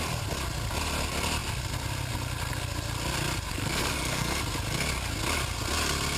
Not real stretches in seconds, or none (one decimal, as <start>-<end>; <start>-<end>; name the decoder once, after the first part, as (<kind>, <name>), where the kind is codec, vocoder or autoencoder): 3.5-4.4 (codec, SNAC)